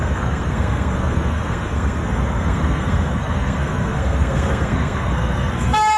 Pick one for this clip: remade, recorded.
remade